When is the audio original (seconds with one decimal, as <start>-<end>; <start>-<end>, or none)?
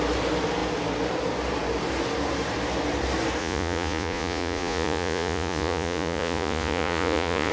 0.0-3.4